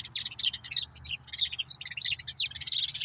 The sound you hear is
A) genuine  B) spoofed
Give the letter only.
A